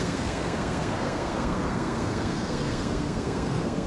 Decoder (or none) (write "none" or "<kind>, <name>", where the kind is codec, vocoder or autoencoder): codec, SNAC